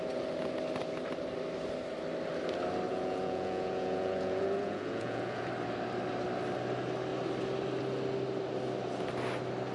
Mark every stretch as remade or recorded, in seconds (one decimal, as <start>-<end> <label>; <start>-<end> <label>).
0.0-2.9 recorded; 2.9-5.5 remade; 5.5-9.7 recorded